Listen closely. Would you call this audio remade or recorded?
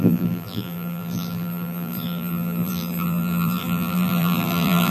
remade